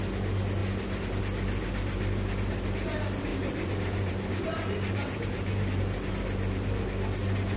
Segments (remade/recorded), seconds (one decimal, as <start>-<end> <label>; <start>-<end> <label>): 0.0-3.3 recorded; 3.3-5.8 remade; 5.8-7.6 recorded